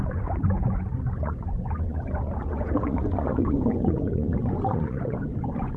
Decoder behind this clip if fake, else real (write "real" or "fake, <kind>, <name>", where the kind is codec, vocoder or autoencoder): fake, vocoder, Vocos